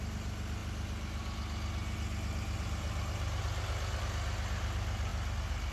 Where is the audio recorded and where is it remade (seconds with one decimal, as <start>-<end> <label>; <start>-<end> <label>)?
0.0-5.7 recorded

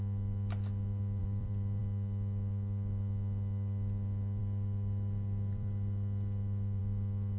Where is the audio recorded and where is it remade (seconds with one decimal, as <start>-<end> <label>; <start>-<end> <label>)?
0.0-1.2 recorded; 1.2-1.8 remade; 1.8-4.4 recorded; 4.4-6.8 remade; 6.8-7.4 recorded

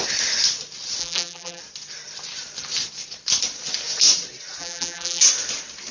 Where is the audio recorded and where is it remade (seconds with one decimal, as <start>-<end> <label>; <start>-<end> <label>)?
0.0-1.0 recorded; 1.0-1.6 remade; 1.6-4.6 recorded; 4.6-5.2 remade; 5.2-5.9 recorded

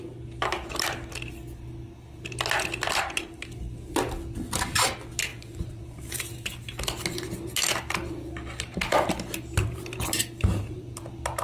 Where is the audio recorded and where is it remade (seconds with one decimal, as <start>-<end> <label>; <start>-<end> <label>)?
0.0-5.3 recorded; 5.3-6.3 remade; 6.3-11.4 recorded

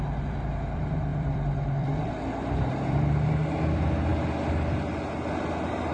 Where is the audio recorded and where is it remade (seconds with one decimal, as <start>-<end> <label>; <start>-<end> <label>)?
0.0-1.1 recorded; 1.1-3.3 remade; 3.3-5.9 recorded

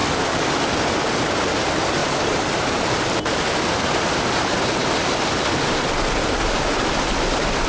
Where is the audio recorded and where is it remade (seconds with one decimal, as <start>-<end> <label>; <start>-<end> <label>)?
0.0-2.0 recorded; 2.0-2.9 remade; 2.9-7.7 recorded